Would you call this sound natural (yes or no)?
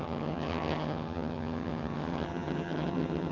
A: no